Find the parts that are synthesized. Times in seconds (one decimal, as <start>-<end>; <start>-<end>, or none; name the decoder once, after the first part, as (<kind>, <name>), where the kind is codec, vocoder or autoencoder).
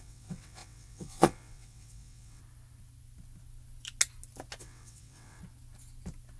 0.0-2.4 (vocoder, WaveNeXt); 4.6-5.4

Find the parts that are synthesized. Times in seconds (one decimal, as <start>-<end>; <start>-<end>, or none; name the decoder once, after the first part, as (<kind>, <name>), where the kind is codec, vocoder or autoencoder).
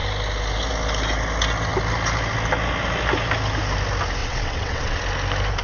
4.2-5.0 (vocoder, WaveNeXt)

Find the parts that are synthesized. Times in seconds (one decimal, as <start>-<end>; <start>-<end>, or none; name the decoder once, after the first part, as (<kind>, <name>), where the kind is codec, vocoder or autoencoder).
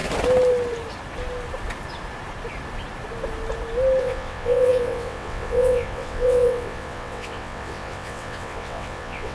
4.0-9.3 (vocoder, WaveNeXt)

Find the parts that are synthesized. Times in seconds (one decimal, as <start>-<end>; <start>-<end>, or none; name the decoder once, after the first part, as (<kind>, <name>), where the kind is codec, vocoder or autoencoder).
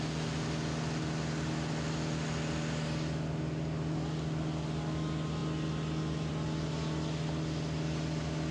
none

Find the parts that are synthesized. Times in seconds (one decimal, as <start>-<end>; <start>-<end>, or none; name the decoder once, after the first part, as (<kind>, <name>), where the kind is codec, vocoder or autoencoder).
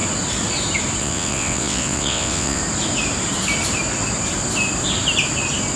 1.0-2.6 (vocoder, WaveNeXt)